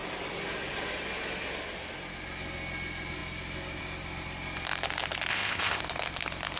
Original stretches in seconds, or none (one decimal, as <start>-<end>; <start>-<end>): 0.0-5.3; 5.8-6.6